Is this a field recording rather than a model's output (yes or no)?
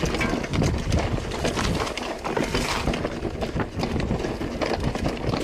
yes